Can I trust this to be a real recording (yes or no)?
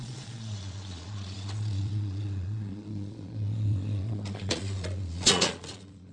no